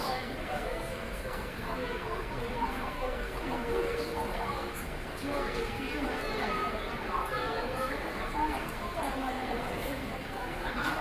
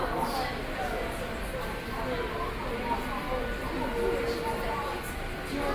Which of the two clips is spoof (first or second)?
first